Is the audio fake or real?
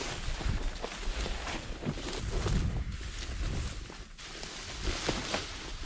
real